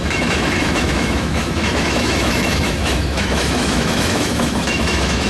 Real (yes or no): no